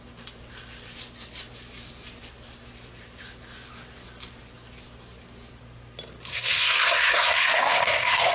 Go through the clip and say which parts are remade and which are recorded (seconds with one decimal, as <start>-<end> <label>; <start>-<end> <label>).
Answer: 0.0-6.3 recorded; 6.3-8.3 remade